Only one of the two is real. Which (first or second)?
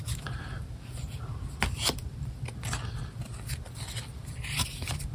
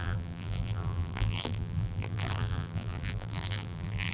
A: first